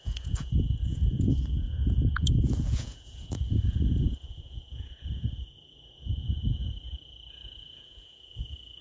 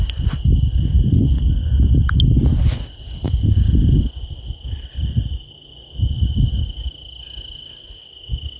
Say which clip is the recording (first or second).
second